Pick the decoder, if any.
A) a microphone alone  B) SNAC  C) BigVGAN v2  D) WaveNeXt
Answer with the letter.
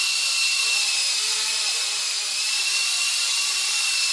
A